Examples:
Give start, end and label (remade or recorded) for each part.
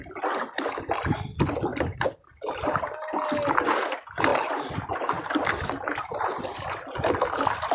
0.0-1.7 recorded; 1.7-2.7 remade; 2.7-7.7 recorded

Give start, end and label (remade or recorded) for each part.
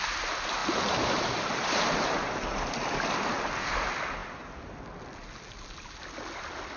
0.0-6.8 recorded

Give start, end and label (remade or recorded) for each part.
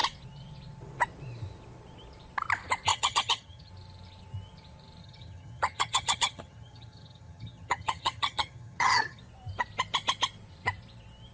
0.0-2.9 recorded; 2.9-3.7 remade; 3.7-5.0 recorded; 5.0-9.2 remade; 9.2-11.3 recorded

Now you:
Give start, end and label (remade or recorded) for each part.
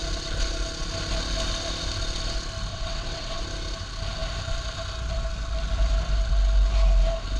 0.0-2.7 recorded; 2.7-3.4 remade; 3.4-7.4 recorded